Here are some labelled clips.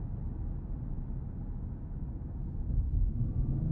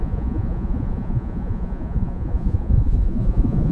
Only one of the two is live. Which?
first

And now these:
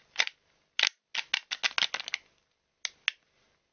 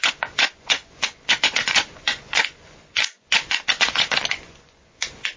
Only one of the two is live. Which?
first